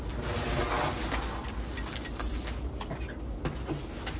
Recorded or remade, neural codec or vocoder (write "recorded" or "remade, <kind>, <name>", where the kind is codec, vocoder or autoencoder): recorded